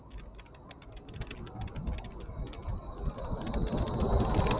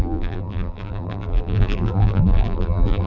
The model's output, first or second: second